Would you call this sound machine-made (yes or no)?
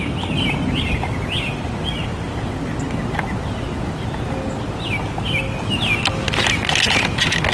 no